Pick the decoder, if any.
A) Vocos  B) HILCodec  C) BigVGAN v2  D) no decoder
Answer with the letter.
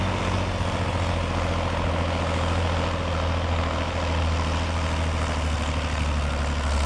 D